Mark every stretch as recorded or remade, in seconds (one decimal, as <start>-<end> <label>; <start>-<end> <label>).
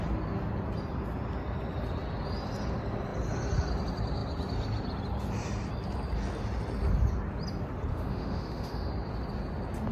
0.0-7.9 recorded; 7.9-8.9 remade; 8.9-9.9 recorded